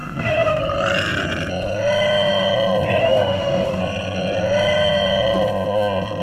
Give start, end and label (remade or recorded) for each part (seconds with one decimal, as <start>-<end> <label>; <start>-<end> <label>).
0.0-0.6 remade; 0.6-3.0 recorded; 3.0-3.8 remade; 3.8-6.2 recorded